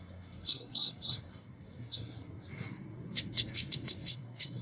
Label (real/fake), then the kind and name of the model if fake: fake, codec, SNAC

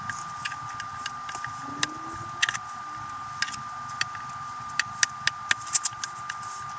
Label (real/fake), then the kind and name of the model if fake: real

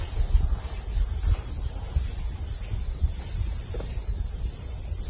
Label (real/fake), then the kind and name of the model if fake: real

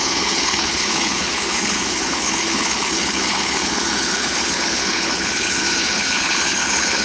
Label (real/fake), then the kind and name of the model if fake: fake, codec, HILCodec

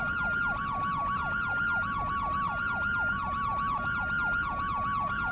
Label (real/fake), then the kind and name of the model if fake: real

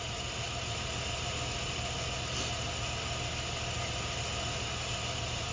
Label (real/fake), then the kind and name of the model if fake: real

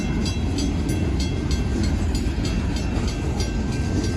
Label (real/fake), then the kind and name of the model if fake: real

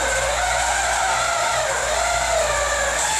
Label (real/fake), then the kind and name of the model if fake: real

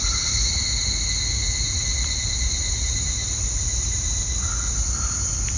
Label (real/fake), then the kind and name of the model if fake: real